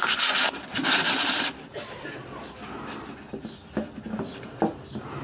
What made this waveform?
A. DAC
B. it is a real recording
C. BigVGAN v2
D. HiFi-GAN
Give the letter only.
B